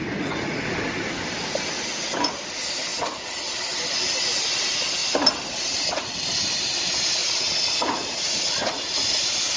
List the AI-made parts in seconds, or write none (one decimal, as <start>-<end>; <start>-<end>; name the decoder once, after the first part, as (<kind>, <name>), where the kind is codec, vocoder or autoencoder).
0.0-0.8 (vocoder, Vocos); 7.2-9.2